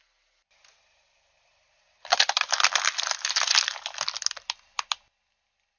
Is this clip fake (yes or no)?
no